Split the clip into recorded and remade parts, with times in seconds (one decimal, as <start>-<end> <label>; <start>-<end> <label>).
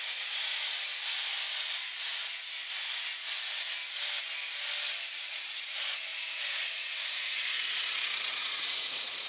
0.0-0.9 remade; 0.9-1.7 recorded; 1.7-2.1 remade; 2.1-5.2 recorded; 5.2-9.3 remade